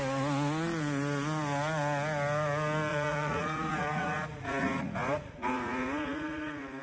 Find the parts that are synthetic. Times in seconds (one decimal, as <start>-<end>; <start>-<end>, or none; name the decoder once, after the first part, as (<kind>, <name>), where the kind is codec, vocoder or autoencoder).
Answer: 2.9-6.8 (vocoder, Vocos)